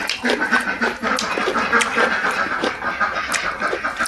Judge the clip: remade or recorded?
recorded